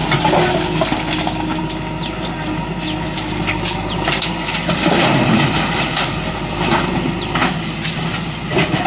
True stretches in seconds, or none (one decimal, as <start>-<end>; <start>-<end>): 0.0-8.9

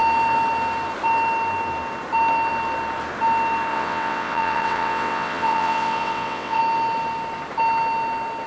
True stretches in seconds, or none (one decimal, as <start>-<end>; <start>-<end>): 0.0-3.7; 6.6-8.5